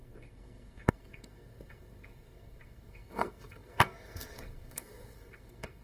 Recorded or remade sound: remade